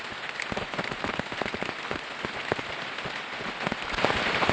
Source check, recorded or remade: recorded